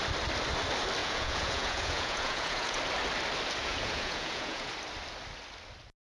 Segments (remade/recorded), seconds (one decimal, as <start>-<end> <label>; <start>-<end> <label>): 0.0-1.0 recorded; 1.0-2.8 remade; 2.8-3.6 recorded; 3.6-4.7 remade; 4.7-6.0 recorded